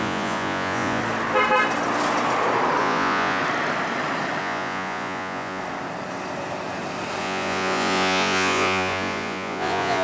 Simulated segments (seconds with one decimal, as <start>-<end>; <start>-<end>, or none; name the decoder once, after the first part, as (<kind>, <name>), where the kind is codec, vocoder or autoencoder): 0.0-1.0 (vocoder, Vocos); 2.8-3.4; 4.4-5.6; 7.2-10.0